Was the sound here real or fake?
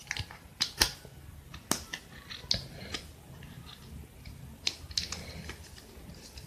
real